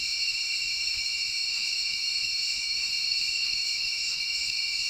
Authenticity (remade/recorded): remade